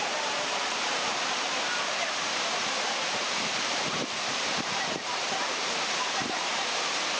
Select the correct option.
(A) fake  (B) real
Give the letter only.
A